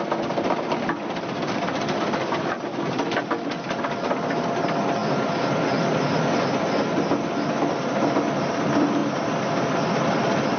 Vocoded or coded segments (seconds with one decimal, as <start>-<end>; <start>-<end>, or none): none